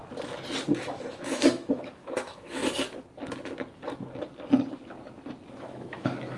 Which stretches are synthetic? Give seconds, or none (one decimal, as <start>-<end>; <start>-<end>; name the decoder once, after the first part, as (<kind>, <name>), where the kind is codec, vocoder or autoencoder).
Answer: 0.8-2.6 (autoencoder, DAC-VAE); 5.5-6.4